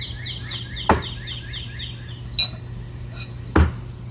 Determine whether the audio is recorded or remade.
recorded